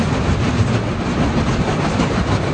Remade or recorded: recorded